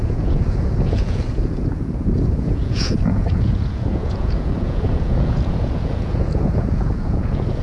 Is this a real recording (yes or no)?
no